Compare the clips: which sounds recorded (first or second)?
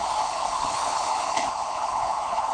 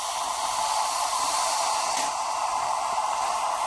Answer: second